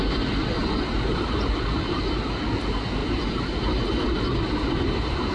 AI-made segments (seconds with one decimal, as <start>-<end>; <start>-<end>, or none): 0.6-2.0